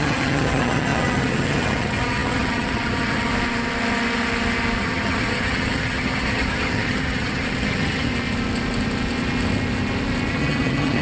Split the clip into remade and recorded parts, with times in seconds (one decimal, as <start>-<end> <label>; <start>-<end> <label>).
0.0-3.3 remade; 3.3-4.8 recorded; 4.8-8.1 remade; 8.1-10.3 recorded; 10.3-11.0 remade